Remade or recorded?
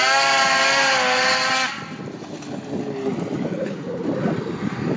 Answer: recorded